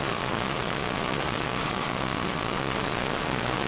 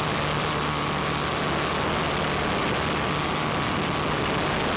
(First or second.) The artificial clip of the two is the first